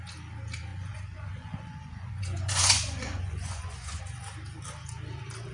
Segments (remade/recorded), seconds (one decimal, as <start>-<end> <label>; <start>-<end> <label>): 0.0-0.7 recorded; 0.7-4.0 remade; 4.0-5.5 recorded